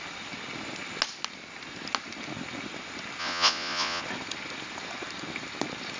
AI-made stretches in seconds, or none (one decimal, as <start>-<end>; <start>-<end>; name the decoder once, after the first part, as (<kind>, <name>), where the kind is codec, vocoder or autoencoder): 3.2-4.0 (vocoder, Vocos)